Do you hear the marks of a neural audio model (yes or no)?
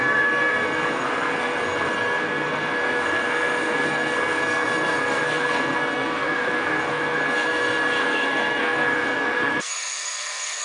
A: yes